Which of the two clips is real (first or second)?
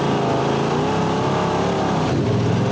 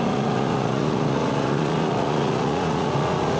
first